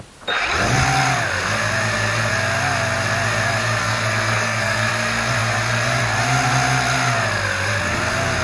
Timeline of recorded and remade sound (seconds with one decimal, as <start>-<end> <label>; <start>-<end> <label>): 0.0-3.8 recorded; 3.8-4.9 remade; 4.9-8.4 recorded